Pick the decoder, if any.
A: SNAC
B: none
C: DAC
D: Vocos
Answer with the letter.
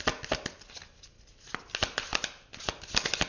B